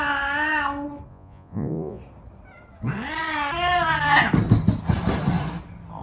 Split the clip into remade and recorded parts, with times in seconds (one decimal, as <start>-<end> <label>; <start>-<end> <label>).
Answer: 0.0-1.1 recorded; 1.1-2.0 remade; 2.0-6.0 recorded